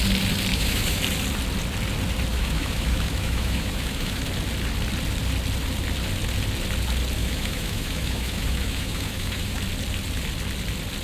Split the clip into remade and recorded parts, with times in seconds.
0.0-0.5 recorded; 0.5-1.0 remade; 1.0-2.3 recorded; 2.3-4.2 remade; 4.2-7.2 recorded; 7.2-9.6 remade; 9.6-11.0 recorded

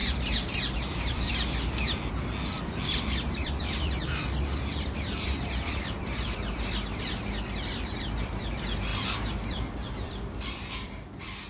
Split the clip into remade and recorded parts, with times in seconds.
0.0-1.8 remade; 1.8-2.9 recorded; 2.9-11.5 remade

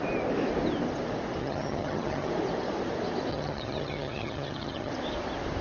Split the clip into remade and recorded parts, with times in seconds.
0.0-1.4 recorded; 1.4-2.3 remade; 2.3-3.3 recorded; 3.3-4.9 remade; 4.9-5.6 recorded

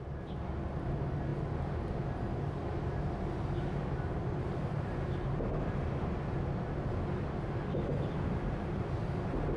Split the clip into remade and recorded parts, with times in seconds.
0.0-9.6 recorded

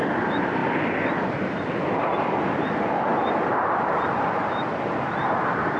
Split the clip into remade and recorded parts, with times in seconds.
0.0-0.6 remade; 0.6-1.2 recorded; 1.2-3.1 remade; 3.1-4.4 recorded; 4.4-5.8 remade

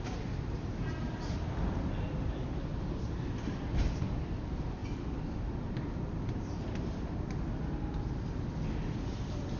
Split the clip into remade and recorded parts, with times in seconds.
0.0-9.6 recorded

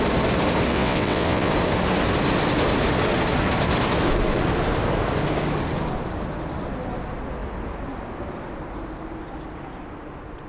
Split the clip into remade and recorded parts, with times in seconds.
0.0-0.7 recorded; 0.7-1.5 remade; 1.5-10.5 recorded